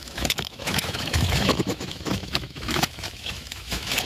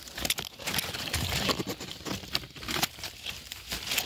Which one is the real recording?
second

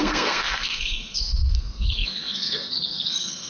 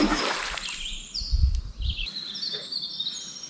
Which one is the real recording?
second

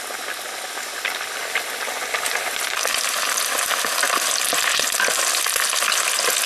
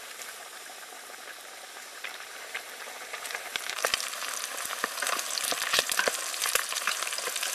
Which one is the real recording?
first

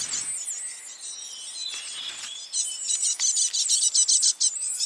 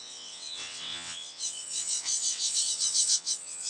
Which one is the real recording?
first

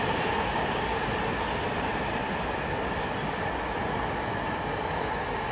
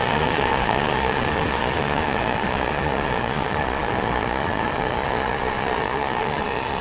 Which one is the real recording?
first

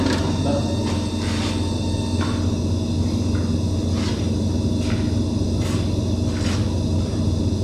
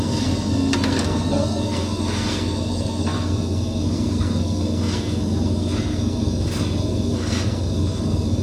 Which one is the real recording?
first